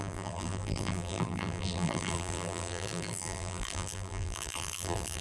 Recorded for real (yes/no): no